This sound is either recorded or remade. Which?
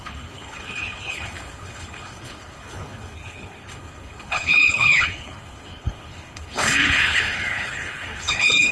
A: remade